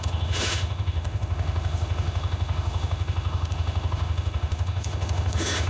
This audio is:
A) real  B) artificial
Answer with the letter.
B